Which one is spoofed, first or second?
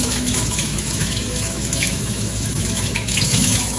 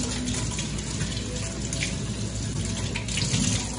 first